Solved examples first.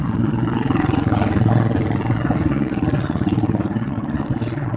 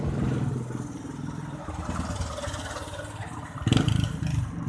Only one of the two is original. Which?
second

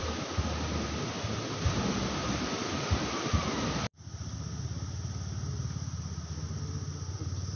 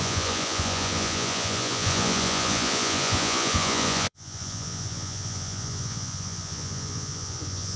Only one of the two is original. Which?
first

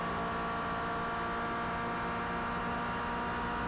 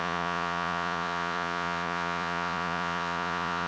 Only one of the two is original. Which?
first